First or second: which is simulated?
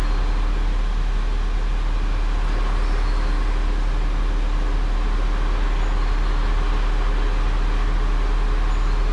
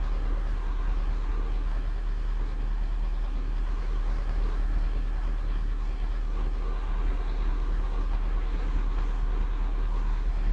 second